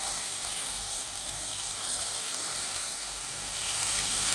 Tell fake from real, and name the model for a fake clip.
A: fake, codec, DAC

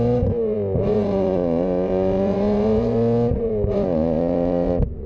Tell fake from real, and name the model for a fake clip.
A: fake, vocoder, Vocos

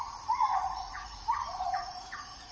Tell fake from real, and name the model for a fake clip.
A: fake, vocoder, Vocos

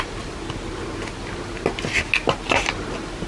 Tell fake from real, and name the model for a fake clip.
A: real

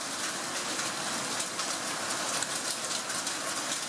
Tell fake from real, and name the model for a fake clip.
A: real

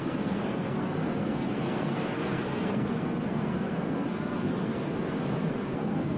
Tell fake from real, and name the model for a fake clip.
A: fake, codec, SNAC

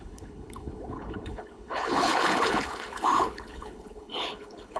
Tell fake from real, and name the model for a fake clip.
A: fake, codec, HILCodec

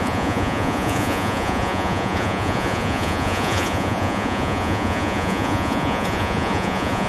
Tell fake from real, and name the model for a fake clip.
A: fake, vocoder, Vocos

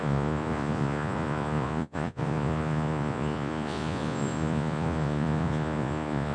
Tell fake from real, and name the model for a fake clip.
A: fake, vocoder, Vocos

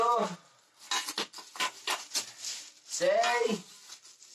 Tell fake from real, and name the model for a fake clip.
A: real